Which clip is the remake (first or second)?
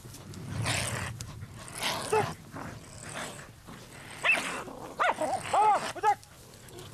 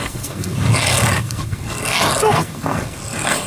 second